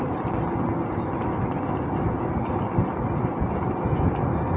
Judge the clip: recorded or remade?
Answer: recorded